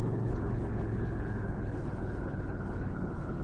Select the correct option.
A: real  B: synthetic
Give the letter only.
B